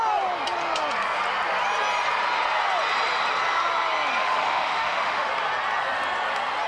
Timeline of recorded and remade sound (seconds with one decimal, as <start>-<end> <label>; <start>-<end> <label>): 0.0-4.2 recorded; 4.2-5.3 remade; 5.3-6.7 recorded